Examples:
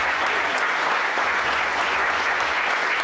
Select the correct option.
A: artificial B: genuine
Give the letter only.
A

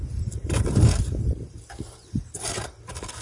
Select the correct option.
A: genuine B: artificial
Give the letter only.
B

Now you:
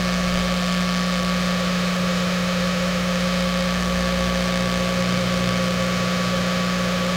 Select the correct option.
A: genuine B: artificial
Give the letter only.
B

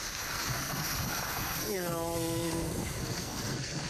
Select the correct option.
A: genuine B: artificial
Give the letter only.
B